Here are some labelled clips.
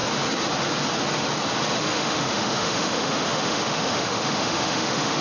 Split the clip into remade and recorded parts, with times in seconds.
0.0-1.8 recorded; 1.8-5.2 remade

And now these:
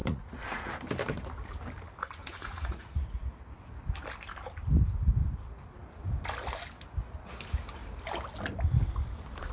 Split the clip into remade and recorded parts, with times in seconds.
0.0-0.7 remade; 0.7-2.2 recorded; 2.2-3.3 remade; 3.3-9.5 recorded

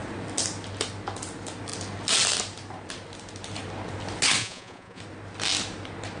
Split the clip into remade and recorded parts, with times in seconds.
0.0-4.4 recorded; 4.4-5.0 remade; 5.0-6.2 recorded

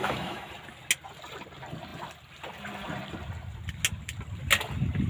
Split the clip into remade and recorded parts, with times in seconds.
0.0-0.5 remade; 0.5-5.1 recorded

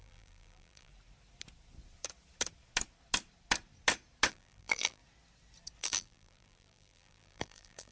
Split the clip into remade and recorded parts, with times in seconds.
0.0-0.9 remade; 0.9-4.3 recorded; 4.3-5.0 remade; 5.0-5.8 recorded; 5.8-7.9 remade

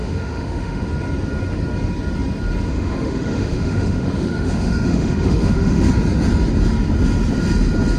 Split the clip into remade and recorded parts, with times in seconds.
0.0-0.9 remade; 0.9-2.7 recorded; 2.7-5.9 remade; 5.9-8.0 recorded

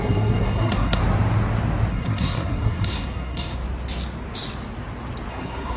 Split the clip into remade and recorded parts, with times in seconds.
0.0-1.0 remade; 1.0-1.9 recorded; 1.9-3.6 remade; 3.6-5.3 recorded; 5.3-5.8 remade